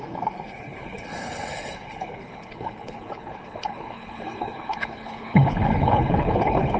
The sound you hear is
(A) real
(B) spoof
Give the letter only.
B